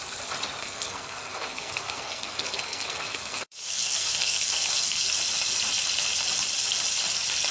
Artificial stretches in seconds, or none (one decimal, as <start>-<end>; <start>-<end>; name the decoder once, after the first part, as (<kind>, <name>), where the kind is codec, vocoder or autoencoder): 0.6-5.1 (codec, SNAC)